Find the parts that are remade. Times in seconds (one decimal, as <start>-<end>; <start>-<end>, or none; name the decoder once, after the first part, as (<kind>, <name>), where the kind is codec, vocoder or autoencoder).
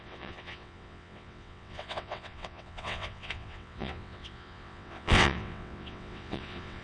0.0-6.8 (vocoder, WaveNeXt)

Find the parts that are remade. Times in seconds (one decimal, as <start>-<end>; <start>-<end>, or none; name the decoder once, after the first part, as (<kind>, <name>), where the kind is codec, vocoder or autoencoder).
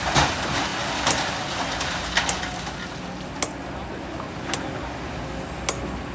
none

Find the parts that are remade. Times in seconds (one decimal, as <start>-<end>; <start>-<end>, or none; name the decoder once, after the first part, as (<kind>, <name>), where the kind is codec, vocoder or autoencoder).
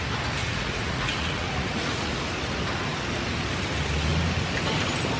0.4-2.1 (vocoder, Vocos)